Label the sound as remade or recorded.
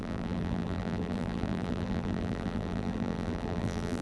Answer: remade